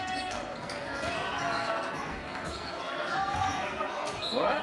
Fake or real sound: fake